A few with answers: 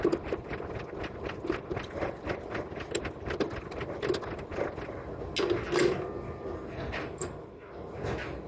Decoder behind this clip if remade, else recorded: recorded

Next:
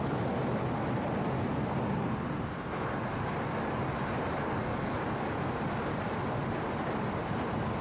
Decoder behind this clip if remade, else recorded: recorded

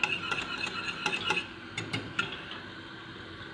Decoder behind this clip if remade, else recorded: recorded